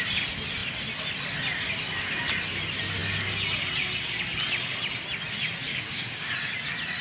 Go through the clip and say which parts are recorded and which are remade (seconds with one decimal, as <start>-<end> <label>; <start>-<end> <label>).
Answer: 0.0-5.7 recorded; 5.7-6.3 remade; 6.3-7.0 recorded